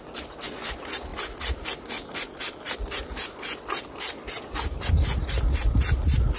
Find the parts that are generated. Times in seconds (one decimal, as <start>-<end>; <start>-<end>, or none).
none